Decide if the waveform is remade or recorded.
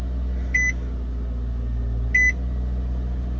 recorded